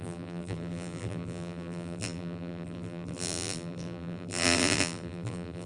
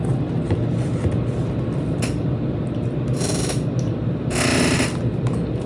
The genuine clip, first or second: second